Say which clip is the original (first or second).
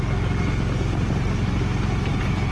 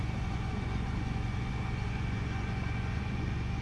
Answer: first